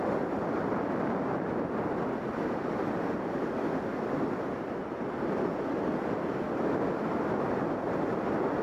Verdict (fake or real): real